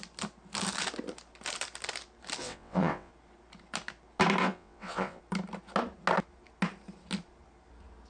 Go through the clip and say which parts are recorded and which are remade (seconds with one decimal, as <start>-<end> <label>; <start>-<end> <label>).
0.0-2.4 recorded; 2.4-3.1 remade; 3.1-4.4 recorded; 4.4-5.2 remade; 5.2-8.1 recorded